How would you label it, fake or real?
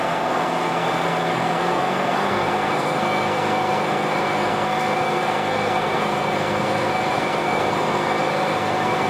fake